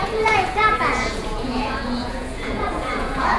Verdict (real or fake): fake